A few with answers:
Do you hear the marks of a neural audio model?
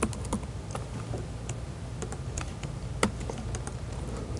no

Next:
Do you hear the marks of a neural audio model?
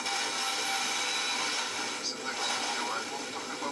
no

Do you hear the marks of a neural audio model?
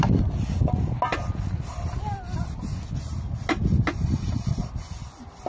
no